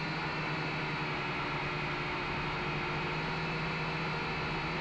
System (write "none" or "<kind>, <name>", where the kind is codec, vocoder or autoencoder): none